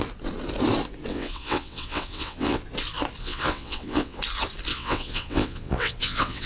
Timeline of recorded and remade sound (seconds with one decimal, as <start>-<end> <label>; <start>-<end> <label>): 0.0-1.1 recorded; 1.1-2.6 remade; 2.6-3.2 recorded; 3.2-4.2 remade; 4.2-4.7 recorded; 4.7-6.5 remade

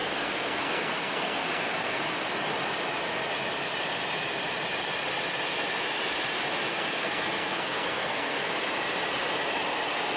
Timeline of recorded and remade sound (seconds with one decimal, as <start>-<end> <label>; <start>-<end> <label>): 0.0-2.0 remade; 2.0-6.7 recorded; 6.7-8.5 remade; 8.5-10.2 recorded